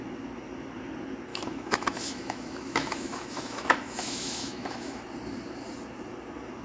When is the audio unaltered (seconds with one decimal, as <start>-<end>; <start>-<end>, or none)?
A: 0.0-1.3; 5.0-6.6